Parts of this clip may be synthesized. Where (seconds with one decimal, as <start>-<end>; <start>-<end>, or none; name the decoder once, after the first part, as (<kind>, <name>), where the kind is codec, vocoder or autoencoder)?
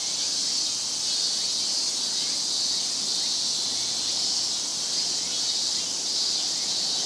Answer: 0.0-4.7 (vocoder, BigVGAN v2); 5.4-7.1